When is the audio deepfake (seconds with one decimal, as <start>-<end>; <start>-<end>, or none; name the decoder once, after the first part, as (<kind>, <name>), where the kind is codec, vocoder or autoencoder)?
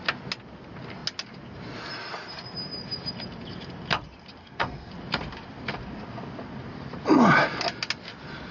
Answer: 4.4-4.9 (codec, SNAC)